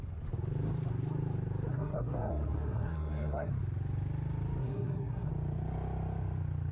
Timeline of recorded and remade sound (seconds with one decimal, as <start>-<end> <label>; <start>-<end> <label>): 0.0-1.7 recorded; 1.7-3.5 remade; 3.5-4.6 recorded; 4.6-5.3 remade; 5.3-6.7 recorded

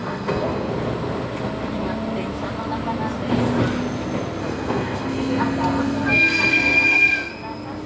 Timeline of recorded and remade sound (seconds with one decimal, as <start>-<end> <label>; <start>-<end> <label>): 0.0-0.7 remade; 0.7-4.4 recorded; 4.4-7.3 remade; 7.3-7.9 recorded

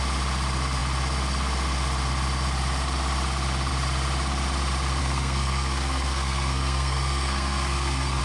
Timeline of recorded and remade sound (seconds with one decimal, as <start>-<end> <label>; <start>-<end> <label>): 0.0-5.0 recorded; 5.0-8.2 remade

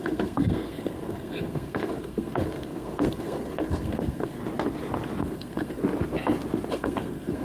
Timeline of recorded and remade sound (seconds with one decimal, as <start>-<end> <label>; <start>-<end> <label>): 0.0-4.4 remade; 4.4-5.2 recorded; 5.2-5.8 remade; 5.8-6.7 recorded; 6.7-7.4 remade

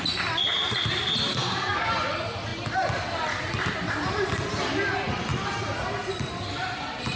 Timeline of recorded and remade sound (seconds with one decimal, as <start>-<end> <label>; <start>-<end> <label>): 0.0-1.3 recorded; 1.3-1.9 remade; 1.9-7.2 recorded